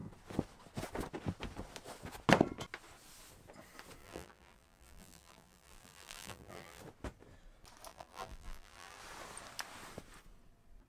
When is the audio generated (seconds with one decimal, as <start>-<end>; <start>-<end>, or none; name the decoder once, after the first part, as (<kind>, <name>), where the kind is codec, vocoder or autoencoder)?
4.0-6.8 (vocoder, BigVGAN v2); 7.9-9.0